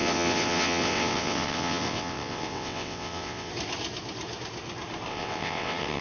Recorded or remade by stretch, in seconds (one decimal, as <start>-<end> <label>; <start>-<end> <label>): 0.0-3.5 remade; 3.5-5.1 recorded; 5.1-6.0 remade